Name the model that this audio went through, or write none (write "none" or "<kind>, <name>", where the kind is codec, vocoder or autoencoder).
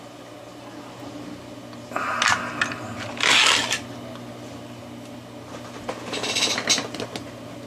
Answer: none